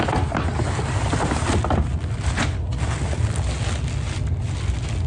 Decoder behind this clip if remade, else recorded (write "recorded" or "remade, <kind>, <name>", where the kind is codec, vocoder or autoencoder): recorded